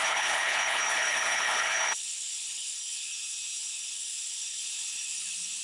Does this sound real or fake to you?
fake